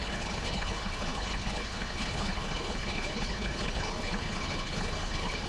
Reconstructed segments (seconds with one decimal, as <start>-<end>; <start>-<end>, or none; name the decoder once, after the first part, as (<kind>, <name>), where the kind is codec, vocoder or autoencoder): 0.0-5.5 (codec, HILCodec)